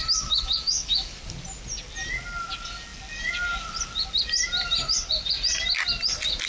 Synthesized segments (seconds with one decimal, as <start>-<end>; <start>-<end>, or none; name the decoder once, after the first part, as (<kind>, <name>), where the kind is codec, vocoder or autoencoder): 0.0-1.2 (autoencoder, DAC-VAE)